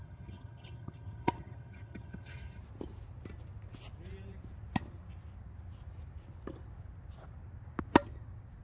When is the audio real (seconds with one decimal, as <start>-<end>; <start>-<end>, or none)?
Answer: 2.6-8.6